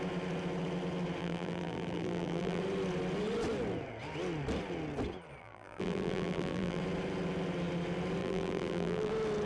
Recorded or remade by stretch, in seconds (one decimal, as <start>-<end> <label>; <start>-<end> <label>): 0.0-1.2 recorded; 1.2-2.6 remade; 2.6-5.4 recorded; 5.4-6.8 remade; 6.8-8.2 recorded; 8.2-9.1 remade; 9.1-9.5 recorded